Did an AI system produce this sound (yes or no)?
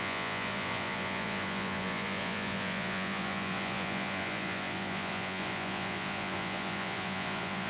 yes